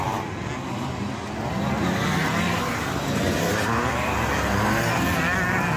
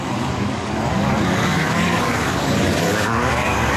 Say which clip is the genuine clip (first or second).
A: first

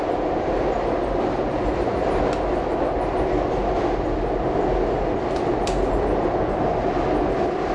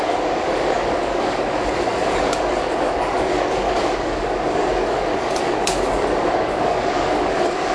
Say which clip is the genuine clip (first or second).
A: first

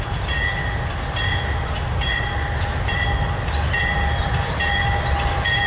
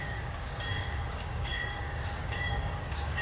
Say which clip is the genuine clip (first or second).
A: first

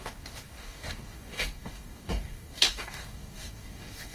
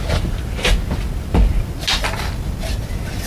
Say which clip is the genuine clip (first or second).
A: second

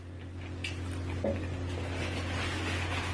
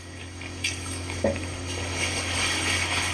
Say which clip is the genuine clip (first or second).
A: first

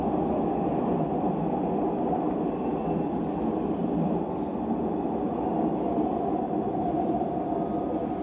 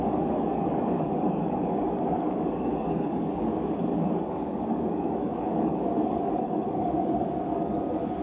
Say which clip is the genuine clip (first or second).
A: first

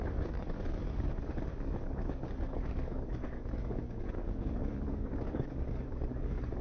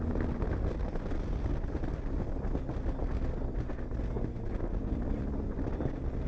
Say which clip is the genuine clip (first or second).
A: second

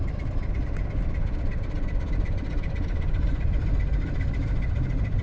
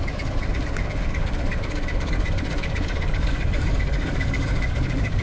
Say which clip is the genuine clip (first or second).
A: first